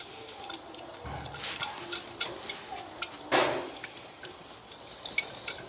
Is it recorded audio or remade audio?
recorded